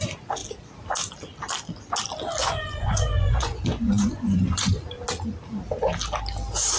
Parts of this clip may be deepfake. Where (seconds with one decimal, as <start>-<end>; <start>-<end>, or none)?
2.4-4.8